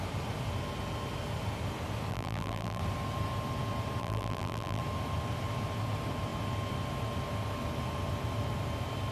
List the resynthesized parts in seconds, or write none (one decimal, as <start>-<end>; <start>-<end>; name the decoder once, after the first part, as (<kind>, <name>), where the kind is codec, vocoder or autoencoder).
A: 2.1-2.8 (vocoder, BigVGAN v2); 4.0-4.8